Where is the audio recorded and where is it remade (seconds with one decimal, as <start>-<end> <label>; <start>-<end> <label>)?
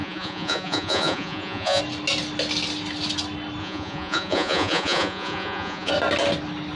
0.0-1.8 remade; 1.8-3.6 recorded; 3.6-5.9 remade; 5.9-6.8 recorded